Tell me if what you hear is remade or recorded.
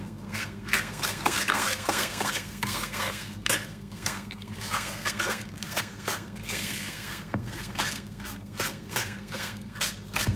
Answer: remade